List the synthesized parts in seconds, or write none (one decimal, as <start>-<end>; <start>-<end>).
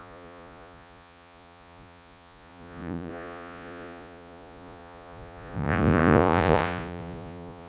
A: 0.0-7.7